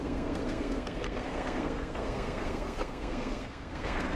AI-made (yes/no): yes